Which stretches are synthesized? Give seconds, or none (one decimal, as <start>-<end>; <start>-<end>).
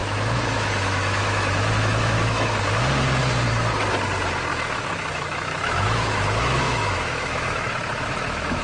0.0-2.5; 4.5-8.6